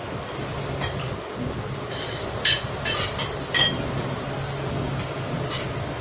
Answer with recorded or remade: recorded